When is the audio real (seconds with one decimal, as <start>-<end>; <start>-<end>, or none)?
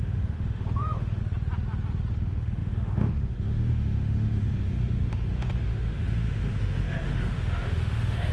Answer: 1.2-2.1